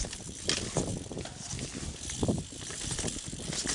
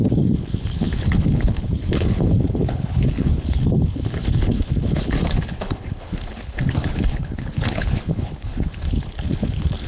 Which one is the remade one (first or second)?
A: second